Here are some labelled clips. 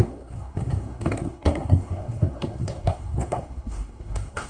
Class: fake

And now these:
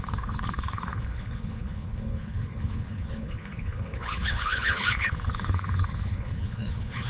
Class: fake